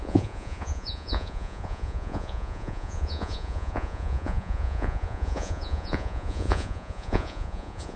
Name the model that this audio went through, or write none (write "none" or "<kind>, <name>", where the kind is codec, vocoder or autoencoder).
vocoder, Vocos